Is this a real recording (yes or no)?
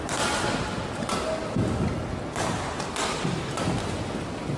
yes